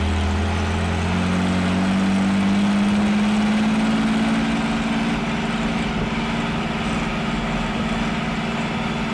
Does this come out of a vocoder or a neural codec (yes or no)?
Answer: no